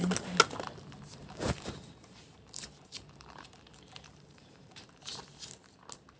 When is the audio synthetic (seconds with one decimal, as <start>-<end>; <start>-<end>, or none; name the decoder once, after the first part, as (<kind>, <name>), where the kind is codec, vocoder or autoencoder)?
1.1-4.8 (vocoder, BigVGAN v2)